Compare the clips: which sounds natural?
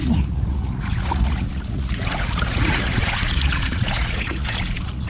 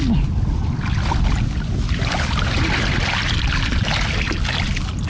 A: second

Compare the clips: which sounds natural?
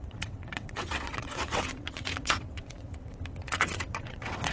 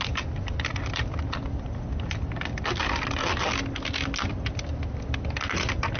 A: second